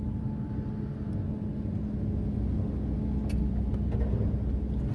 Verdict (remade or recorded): recorded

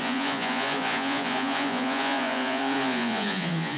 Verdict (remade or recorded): remade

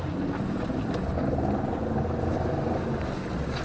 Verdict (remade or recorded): recorded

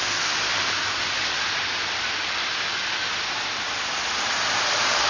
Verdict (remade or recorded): recorded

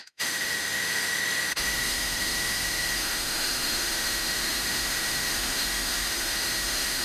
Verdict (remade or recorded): remade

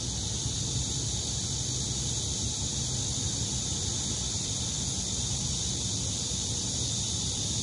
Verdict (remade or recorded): recorded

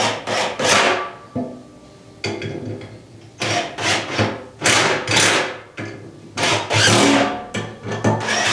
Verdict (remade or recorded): recorded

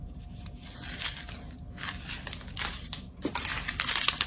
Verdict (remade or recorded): recorded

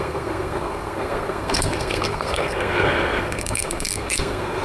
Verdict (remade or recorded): remade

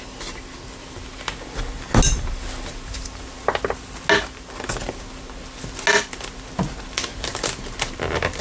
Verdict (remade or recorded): recorded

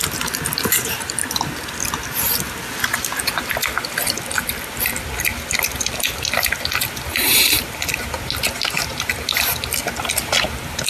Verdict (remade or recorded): recorded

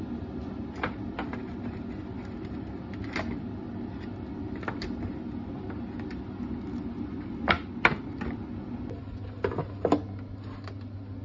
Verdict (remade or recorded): recorded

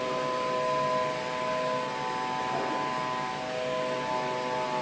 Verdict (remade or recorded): recorded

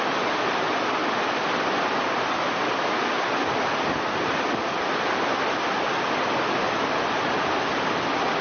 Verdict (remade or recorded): recorded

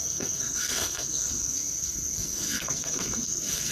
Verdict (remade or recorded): remade